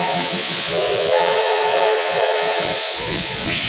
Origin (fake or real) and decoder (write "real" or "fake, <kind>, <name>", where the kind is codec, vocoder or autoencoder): fake, vocoder, Vocos